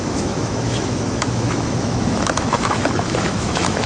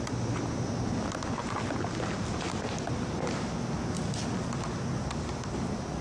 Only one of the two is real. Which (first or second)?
second